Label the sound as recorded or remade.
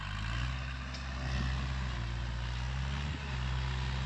recorded